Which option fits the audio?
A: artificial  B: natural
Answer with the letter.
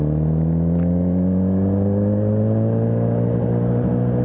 B